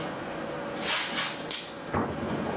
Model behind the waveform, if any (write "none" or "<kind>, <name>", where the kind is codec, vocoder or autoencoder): vocoder, Vocos